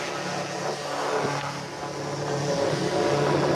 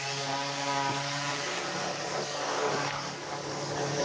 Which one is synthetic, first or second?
second